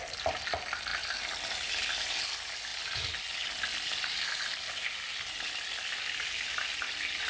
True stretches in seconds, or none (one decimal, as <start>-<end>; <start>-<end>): 0.0-7.3